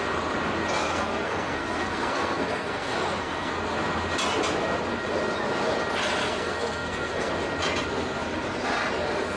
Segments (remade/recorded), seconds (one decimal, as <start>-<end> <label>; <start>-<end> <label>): 0.0-0.8 recorded; 0.8-3.6 remade; 3.6-6.2 recorded; 6.2-7.3 remade; 7.3-9.4 recorded